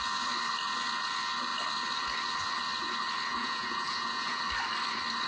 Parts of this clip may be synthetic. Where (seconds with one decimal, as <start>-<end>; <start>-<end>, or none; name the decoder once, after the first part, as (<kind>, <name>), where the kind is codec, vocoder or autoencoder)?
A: 3.3-4.4 (vocoder, Vocos)